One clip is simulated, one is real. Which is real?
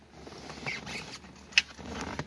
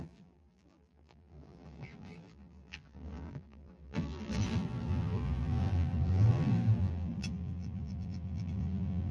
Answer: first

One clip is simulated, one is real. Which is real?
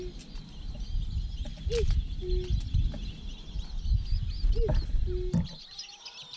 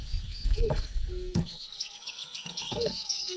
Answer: first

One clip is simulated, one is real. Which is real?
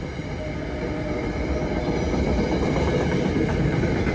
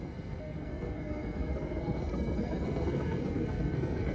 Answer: first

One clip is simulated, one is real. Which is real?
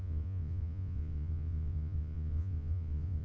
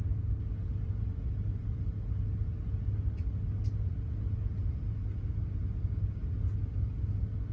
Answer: second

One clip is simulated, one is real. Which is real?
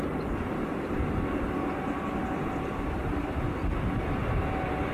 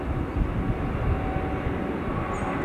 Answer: second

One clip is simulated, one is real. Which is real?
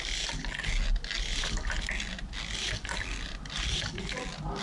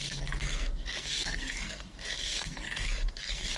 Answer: first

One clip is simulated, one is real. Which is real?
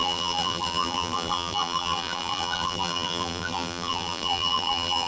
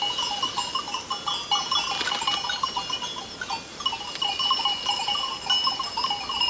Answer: second